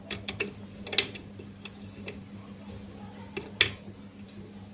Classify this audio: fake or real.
real